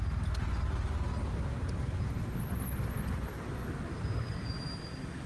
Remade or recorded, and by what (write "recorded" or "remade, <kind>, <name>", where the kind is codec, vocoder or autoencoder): recorded